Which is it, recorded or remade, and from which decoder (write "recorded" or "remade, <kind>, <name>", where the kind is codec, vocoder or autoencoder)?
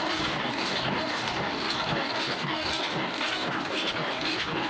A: remade, codec, DAC